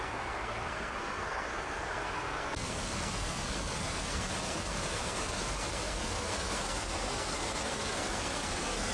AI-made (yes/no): yes